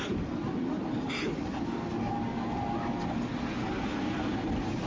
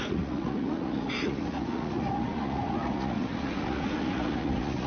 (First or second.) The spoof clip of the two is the second